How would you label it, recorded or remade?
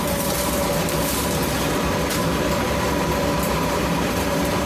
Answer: remade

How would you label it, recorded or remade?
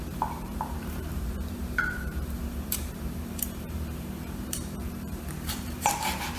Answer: remade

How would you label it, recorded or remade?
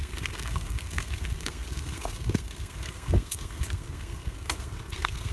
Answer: remade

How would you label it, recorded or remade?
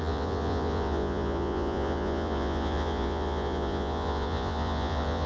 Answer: remade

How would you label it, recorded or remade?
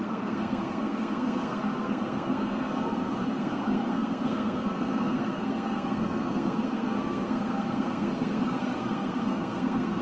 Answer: remade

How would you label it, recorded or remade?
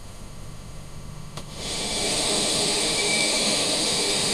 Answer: remade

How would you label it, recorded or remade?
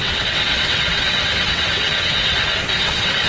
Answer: remade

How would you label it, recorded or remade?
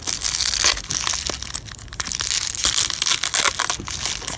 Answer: recorded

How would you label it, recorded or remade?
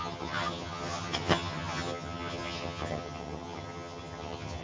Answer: remade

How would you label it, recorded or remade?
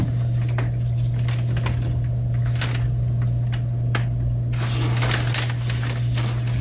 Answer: recorded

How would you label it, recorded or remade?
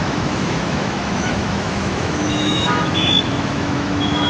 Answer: remade